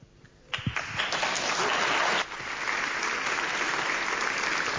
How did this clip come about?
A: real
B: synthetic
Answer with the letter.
A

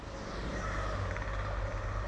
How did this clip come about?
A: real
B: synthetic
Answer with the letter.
A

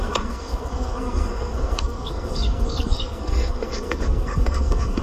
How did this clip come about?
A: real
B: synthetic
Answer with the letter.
B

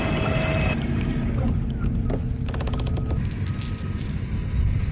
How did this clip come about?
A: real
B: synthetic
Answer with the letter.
A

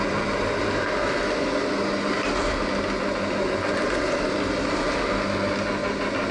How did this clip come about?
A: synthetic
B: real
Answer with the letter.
B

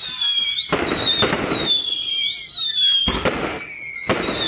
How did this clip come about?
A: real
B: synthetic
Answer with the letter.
A